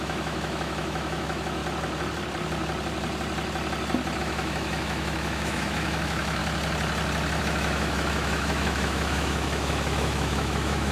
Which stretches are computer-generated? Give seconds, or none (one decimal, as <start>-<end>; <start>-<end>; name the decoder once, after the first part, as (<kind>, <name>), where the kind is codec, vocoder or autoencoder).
0.0-1.6 (autoencoder, DAC-VAE); 4.2-6.4; 7.4-10.9